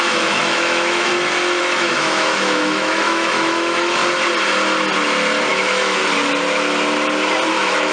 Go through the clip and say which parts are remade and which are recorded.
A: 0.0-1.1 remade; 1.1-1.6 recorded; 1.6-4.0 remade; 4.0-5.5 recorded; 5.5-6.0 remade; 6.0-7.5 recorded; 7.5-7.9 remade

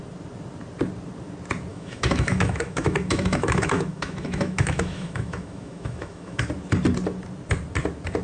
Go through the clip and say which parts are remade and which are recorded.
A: 0.0-1.7 recorded; 1.7-6.4 remade; 6.4-8.2 recorded

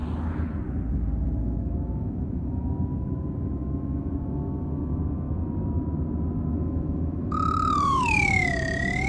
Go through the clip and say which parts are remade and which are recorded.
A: 0.0-1.4 recorded; 1.4-5.0 remade; 5.0-6.5 recorded; 6.5-9.1 remade

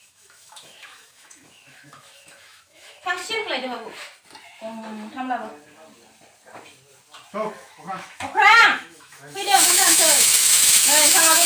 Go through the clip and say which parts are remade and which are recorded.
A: 0.0-3.2 remade; 3.2-7.3 recorded; 7.3-11.5 remade

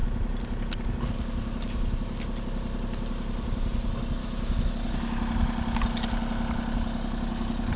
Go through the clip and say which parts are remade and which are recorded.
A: 0.0-4.2 recorded; 4.2-4.7 remade; 4.7-7.8 recorded

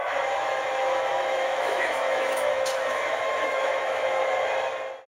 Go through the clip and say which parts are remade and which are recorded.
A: 0.0-4.2 remade; 4.2-5.1 recorded